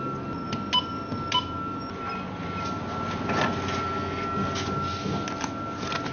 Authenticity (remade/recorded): recorded